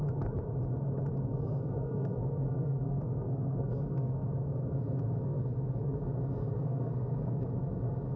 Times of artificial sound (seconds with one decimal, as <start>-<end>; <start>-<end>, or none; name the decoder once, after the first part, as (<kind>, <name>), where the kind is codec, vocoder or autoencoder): 1.1-6.0 (codec, SNAC); 6.4-7.5